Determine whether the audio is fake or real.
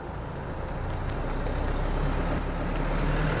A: real